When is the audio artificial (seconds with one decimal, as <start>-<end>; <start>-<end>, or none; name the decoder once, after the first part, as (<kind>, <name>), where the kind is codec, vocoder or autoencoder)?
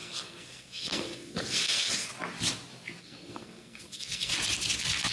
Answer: 0.0-2.1 (codec, SNAC); 3.0-4.3